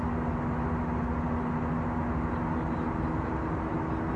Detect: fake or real real